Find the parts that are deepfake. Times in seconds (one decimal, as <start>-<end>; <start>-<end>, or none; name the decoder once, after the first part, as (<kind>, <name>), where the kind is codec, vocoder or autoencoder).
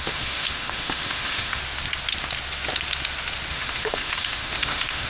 0.0-1.6 (autoencoder, DAC-VAE); 3.5-5.1